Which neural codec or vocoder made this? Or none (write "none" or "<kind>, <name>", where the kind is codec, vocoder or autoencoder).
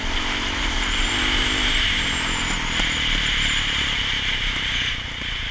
vocoder, BigVGAN v2